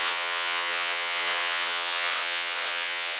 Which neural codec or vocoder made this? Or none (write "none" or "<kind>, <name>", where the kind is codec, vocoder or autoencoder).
vocoder, WaveNeXt